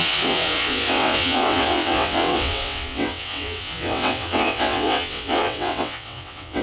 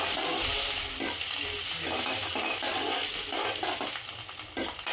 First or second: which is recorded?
second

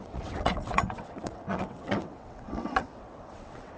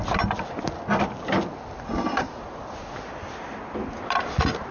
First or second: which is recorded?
second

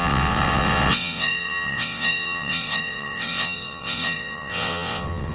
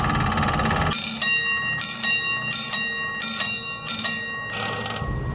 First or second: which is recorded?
second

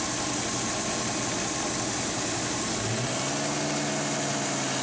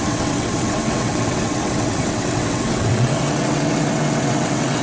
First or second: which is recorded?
first